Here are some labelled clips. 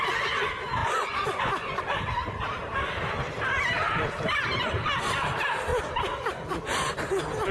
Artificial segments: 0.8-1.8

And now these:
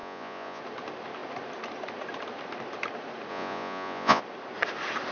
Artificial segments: 0.0-0.6; 3.3-4.2

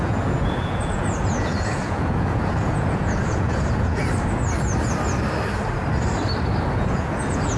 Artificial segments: 0.0-4.0; 6.7-7.6

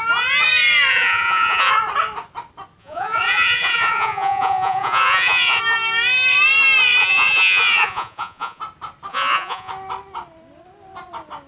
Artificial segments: 0.9-1.7; 2.8-5.6; 7.0-8.6; 9.1-9.7

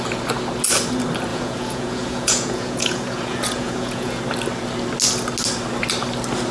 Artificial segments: 1.3-4.2

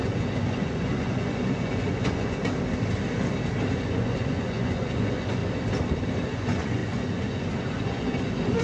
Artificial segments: 0.0-2.4; 3.7-5.4; 6.3-8.6